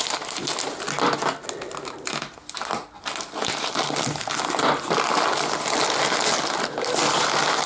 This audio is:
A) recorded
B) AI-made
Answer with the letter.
A